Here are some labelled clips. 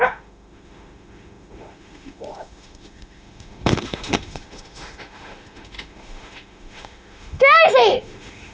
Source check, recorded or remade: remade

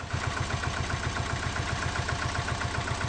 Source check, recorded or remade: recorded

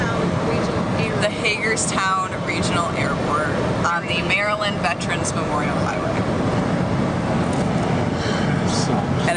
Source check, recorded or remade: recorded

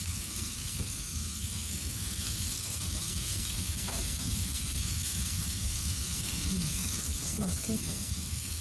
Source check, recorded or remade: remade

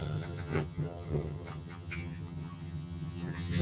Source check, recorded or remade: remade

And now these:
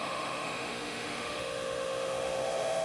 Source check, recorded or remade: remade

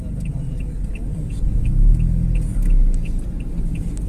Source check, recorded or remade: recorded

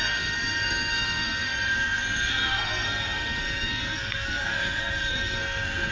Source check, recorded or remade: remade